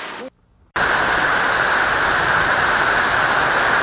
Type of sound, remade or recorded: recorded